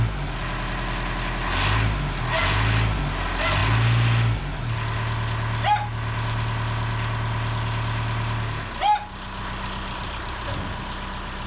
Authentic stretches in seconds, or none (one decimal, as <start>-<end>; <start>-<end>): 0.0-11.5

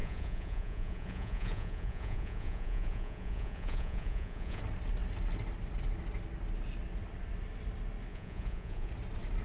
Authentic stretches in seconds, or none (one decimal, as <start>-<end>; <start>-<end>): 4.6-8.1; 8.9-9.4

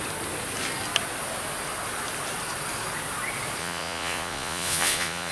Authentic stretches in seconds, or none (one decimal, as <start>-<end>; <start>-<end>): 0.0-3.6

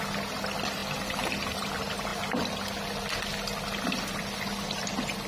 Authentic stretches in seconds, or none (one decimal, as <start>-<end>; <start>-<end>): 0.0-5.3